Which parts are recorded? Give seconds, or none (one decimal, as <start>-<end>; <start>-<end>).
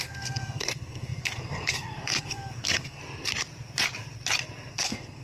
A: 3.0-4.7